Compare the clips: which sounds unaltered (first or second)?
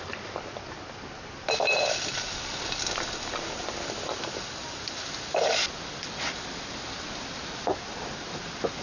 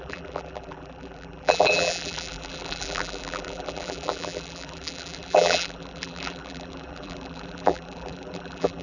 first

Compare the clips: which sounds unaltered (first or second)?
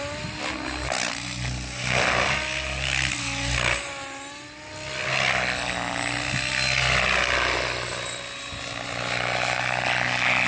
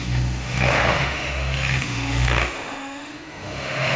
first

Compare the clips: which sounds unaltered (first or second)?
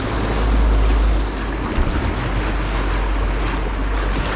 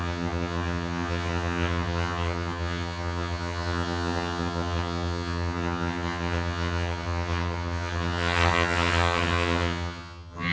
first